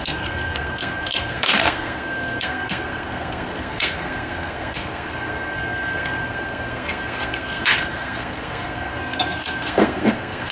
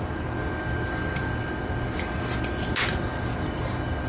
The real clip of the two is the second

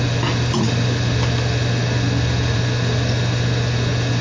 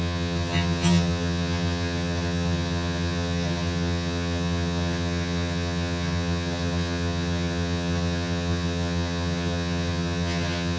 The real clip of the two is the first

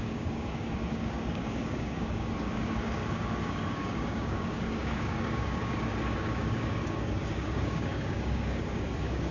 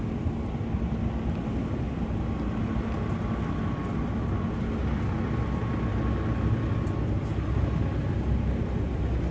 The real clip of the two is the second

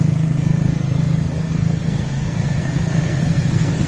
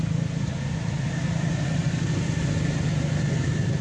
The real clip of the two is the second